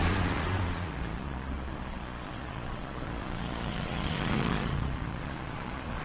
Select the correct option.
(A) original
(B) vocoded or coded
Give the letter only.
B